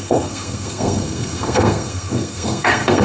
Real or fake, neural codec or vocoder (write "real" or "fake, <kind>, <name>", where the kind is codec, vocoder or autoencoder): fake, codec, SNAC